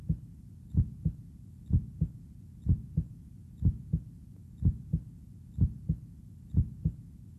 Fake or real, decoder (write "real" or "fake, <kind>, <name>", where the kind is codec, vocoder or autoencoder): real